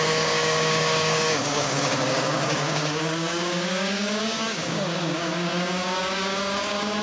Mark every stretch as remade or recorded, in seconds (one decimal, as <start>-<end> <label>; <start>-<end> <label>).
0.0-7.0 remade